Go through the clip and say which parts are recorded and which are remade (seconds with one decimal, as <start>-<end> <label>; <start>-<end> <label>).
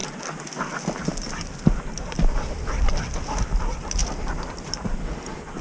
0.0-5.6 recorded